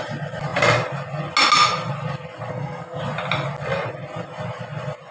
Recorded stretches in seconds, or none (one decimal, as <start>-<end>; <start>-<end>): 0.0-2.5; 3.0-5.1